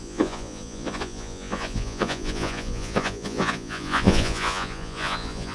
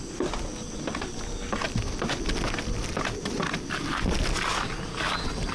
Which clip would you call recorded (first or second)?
second